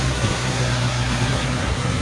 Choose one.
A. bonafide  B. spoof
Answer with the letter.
B